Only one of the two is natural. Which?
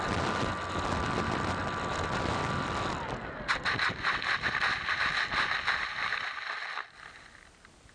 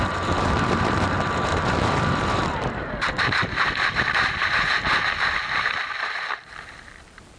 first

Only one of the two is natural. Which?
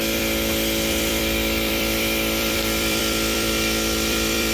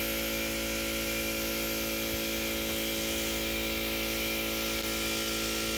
second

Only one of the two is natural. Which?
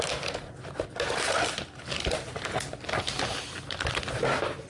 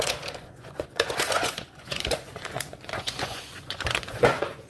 first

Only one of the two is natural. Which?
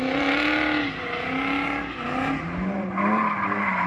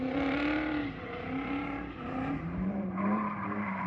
first